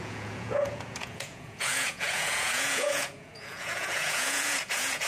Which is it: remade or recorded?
remade